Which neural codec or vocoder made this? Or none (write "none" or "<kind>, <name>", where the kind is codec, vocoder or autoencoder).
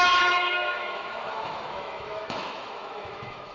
autoencoder, DAC-VAE